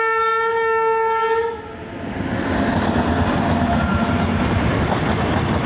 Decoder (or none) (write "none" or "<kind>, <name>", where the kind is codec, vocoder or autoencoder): none